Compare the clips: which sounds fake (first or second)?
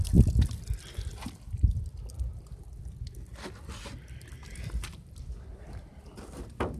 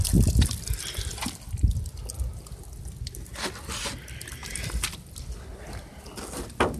first